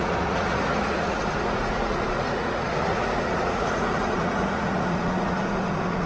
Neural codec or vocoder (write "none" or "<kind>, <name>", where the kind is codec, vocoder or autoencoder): vocoder, Vocos